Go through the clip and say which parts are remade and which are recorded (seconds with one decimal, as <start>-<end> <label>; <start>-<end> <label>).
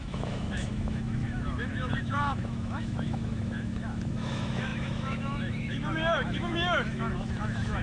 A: 0.0-7.8 remade